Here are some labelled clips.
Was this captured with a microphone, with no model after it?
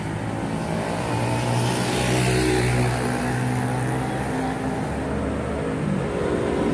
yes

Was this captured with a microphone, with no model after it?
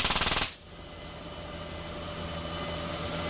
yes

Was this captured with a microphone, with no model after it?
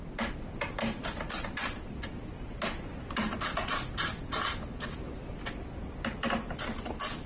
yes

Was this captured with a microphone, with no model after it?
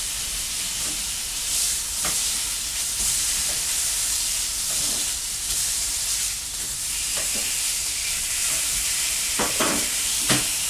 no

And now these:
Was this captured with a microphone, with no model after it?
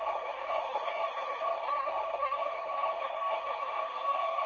no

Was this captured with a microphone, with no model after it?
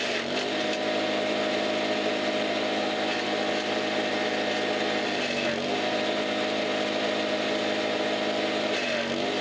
yes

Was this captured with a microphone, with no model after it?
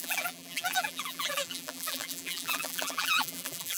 no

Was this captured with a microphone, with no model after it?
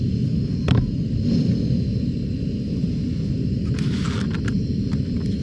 yes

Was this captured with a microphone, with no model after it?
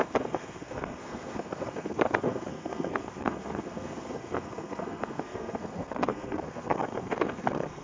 no